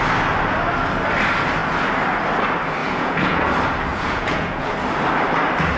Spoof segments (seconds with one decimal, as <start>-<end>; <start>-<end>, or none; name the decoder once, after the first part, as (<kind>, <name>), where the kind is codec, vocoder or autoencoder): 2.8-3.4 (vocoder, Vocos); 3.9-4.7